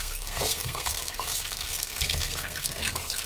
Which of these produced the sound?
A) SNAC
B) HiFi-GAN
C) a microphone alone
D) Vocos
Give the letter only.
A